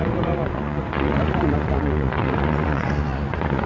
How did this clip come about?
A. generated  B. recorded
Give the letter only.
A